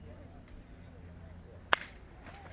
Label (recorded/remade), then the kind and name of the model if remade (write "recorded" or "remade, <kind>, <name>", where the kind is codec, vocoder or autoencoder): recorded